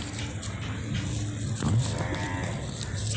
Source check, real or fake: real